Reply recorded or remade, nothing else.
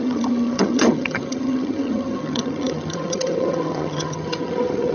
remade